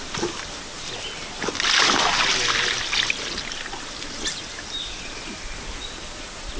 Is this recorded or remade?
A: recorded